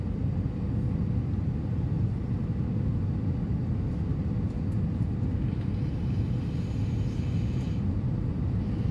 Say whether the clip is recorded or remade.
recorded